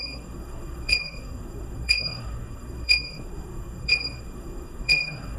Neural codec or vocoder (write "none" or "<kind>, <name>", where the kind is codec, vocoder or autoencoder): codec, SNAC